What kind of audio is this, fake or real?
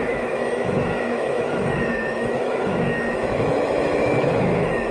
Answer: fake